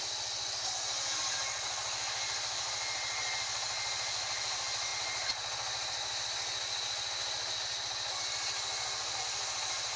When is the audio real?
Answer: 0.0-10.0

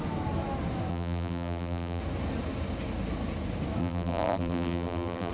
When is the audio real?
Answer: 0.0-0.9; 2.0-3.8